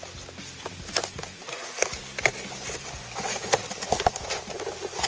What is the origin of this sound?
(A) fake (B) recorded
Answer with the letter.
B